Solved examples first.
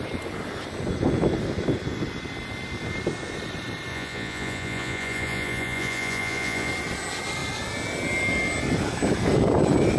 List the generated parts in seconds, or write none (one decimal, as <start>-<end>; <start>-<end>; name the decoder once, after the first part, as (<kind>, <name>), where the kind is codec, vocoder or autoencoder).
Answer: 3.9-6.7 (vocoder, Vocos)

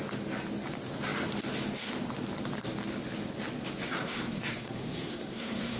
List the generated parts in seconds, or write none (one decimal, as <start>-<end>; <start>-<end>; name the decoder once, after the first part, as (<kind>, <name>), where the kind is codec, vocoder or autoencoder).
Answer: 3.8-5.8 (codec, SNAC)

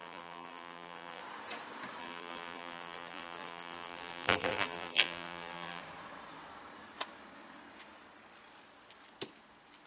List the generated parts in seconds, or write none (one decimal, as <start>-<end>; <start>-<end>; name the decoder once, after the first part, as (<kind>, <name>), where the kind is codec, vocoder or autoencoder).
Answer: 0.0-1.2 (vocoder, BigVGAN v2); 2.0-5.8